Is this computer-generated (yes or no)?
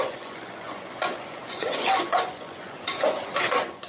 yes